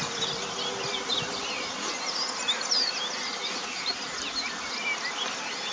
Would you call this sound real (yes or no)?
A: yes